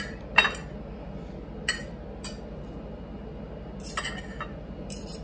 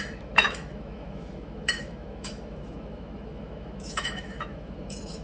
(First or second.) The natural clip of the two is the first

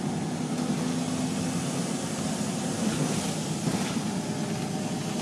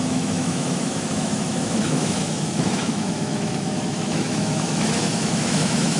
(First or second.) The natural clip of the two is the first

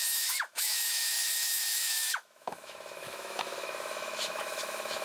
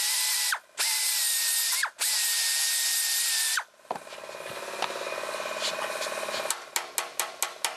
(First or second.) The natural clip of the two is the second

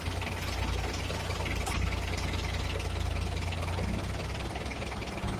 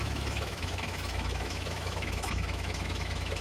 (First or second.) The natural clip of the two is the first